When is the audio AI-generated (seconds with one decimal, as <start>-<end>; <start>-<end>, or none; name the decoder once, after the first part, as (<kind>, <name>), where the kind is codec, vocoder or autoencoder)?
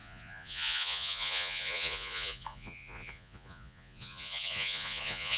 0.0-5.4 (vocoder, Vocos)